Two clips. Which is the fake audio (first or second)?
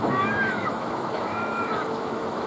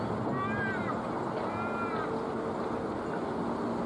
first